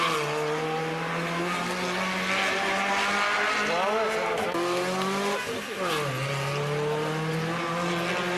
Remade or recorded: recorded